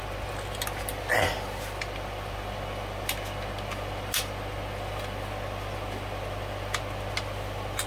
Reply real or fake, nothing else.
real